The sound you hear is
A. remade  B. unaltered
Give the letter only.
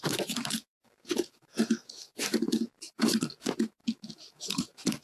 A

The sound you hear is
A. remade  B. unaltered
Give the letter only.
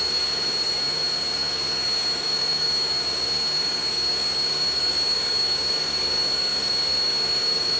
A